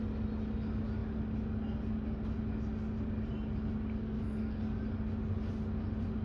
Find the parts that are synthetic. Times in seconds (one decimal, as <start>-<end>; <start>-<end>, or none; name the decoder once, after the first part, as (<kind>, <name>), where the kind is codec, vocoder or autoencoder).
4.0-4.6 (codec, SNAC)